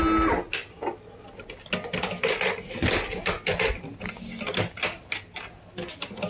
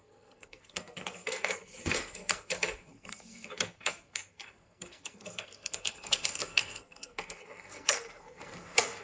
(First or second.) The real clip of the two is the first